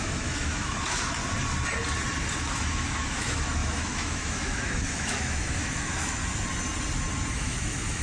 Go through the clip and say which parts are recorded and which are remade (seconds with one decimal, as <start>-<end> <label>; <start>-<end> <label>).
0.0-1.2 remade; 1.2-2.4 recorded; 2.4-6.2 remade; 6.2-7.3 recorded; 7.3-8.0 remade